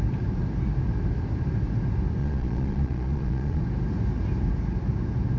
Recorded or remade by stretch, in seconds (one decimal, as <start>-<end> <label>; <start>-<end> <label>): 0.0-2.2 recorded; 2.2-3.6 remade; 3.6-5.4 recorded